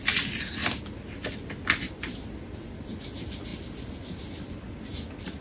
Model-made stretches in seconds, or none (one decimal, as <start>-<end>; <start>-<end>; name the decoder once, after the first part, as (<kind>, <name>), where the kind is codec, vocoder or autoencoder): none